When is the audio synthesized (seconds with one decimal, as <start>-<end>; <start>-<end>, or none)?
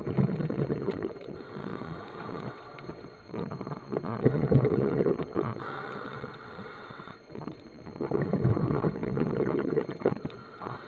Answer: 0.0-10.9